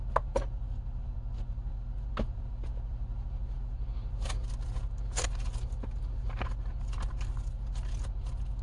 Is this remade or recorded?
recorded